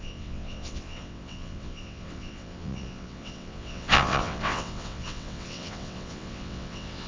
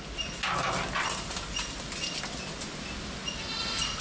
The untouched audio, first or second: second